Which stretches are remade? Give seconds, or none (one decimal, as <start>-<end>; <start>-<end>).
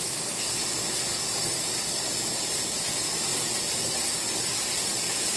none